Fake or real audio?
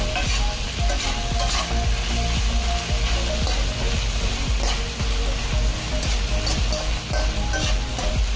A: real